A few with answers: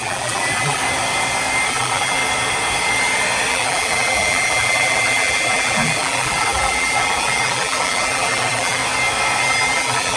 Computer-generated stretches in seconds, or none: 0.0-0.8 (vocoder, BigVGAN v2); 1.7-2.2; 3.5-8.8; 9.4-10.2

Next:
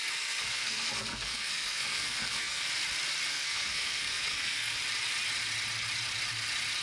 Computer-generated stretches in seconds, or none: 0.0-2.7 (codec, SNAC); 3.3-4.8

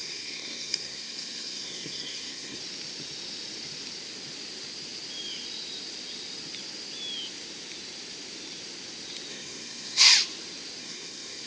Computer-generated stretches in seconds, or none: 0.0-2.6 (codec, SNAC); 9.3-10.1; 10.8-11.5

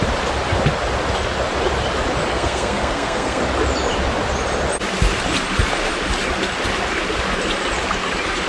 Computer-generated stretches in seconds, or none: 2.3-3.4 (codec, SNAC)

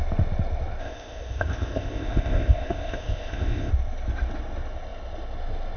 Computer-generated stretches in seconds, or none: 0.8-3.7 (codec, ZipCodec)

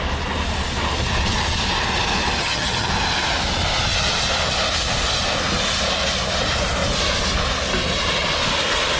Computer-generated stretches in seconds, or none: 2.4-2.9 (vocoder, HiFi-GAN)